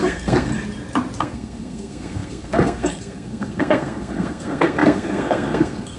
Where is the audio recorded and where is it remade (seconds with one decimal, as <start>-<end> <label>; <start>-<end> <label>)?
0.0-0.5 remade; 0.5-1.2 recorded; 1.2-6.0 remade